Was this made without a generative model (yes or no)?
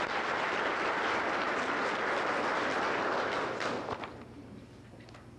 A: yes